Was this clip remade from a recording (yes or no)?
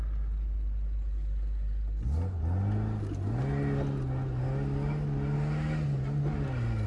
no